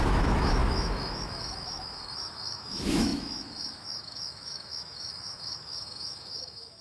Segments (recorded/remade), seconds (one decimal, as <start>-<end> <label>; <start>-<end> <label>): 0.0-6.8 remade